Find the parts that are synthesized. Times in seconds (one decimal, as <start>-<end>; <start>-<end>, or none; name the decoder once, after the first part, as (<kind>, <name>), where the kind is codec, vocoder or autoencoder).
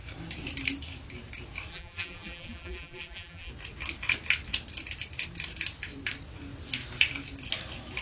1.7-3.5 (vocoder, BigVGAN v2)